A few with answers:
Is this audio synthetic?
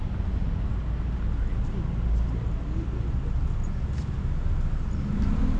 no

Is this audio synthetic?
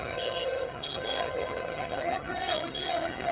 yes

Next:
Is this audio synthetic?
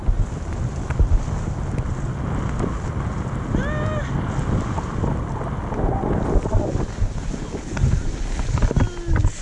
no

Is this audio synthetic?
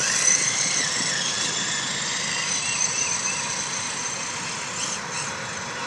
no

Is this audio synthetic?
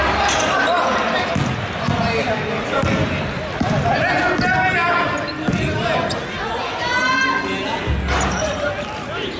no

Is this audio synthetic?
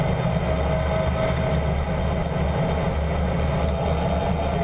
no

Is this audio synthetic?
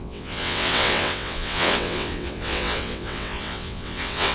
yes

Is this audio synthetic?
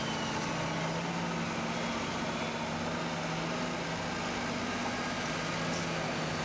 no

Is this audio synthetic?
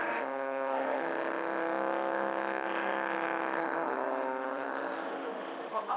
yes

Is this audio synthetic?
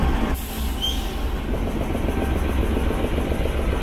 no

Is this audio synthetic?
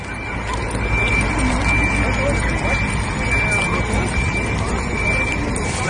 no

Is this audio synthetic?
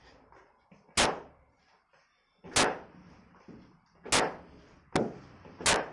no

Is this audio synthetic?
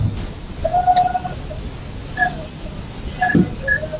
no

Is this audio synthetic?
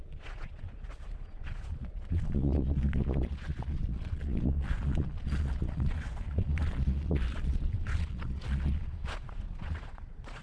yes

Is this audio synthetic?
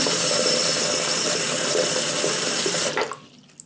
no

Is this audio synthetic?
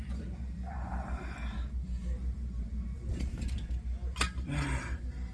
yes